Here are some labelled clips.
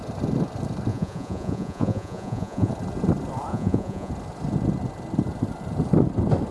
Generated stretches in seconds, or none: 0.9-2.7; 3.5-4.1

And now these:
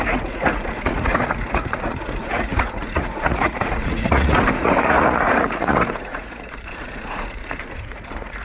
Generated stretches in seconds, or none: 0.0-8.4

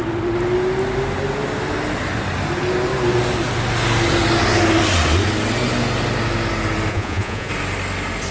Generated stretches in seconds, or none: 6.9-7.5

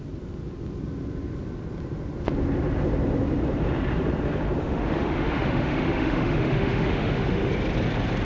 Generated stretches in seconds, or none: 4.6-7.5

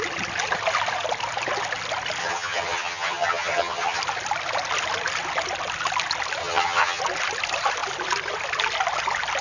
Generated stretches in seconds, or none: 2.2-4.0; 6.4-7.0

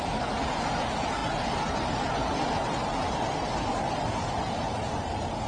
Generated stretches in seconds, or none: none

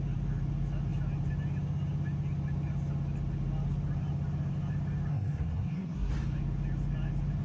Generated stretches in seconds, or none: 5.1-6.1

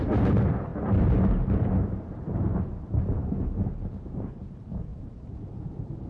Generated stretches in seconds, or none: 0.0-0.7; 1.2-3.2; 3.8-6.1